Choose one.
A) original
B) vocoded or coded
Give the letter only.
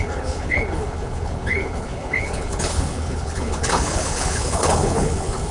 B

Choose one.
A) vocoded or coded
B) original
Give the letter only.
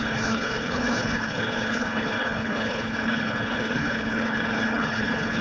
A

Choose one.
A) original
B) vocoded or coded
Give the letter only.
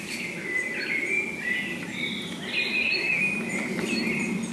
A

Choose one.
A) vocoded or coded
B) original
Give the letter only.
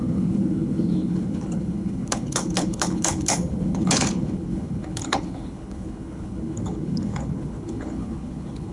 A